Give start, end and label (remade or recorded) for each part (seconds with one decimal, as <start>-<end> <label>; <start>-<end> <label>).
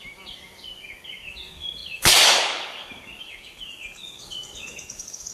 0.0-5.3 remade